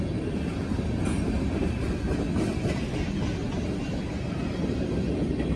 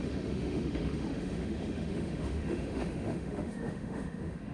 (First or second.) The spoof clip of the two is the second